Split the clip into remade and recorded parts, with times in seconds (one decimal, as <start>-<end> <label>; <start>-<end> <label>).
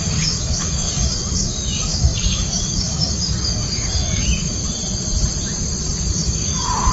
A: 0.0-4.6 remade; 4.6-6.1 recorded; 6.1-6.9 remade